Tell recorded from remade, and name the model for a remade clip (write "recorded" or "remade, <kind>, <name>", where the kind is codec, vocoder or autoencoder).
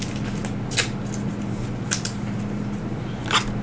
recorded